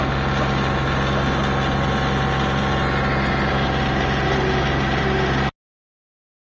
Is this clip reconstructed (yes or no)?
no